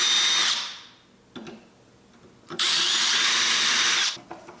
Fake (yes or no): no